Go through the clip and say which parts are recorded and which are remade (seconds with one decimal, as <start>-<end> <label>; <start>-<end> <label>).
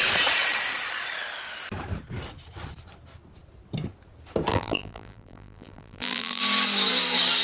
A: 0.0-4.5 recorded; 4.5-6.4 remade; 6.4-7.4 recorded